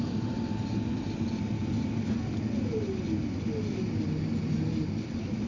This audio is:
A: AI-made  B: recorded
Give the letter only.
B